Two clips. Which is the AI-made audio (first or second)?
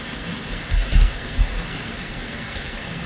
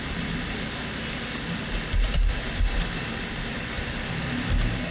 first